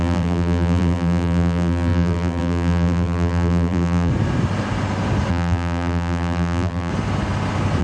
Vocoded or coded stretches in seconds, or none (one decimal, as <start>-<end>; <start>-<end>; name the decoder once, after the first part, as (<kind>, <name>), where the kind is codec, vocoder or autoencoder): 0.0-4.1 (vocoder, BigVGAN v2); 5.3-6.9